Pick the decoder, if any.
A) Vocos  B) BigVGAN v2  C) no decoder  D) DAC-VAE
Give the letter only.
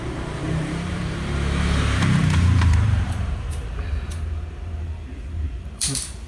B